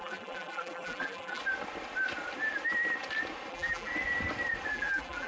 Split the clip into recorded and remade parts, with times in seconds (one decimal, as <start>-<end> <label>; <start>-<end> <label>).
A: 0.0-1.4 remade; 1.4-3.5 recorded; 3.5-3.9 remade; 3.9-4.7 recorded; 4.7-5.3 remade